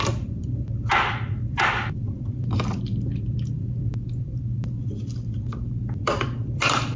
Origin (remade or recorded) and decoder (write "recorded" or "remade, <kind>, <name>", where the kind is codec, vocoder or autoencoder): remade, vocoder, BigVGAN v2